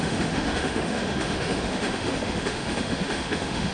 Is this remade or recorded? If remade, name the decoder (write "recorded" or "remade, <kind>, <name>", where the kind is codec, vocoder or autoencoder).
remade, autoencoder, DAC-VAE